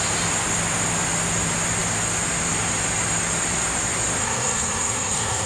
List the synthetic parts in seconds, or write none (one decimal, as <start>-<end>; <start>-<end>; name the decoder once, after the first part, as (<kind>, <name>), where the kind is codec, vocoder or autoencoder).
4.2-5.5 (codec, SNAC)